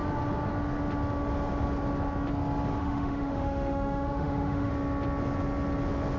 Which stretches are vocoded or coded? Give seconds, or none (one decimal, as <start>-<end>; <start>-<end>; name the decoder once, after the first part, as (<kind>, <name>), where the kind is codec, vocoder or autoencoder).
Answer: 2.8-4.7 (autoencoder, DAC-VAE)